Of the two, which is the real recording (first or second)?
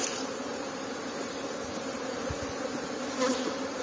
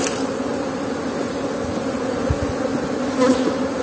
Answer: second